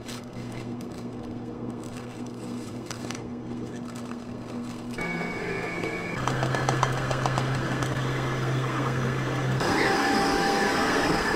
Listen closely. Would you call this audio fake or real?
fake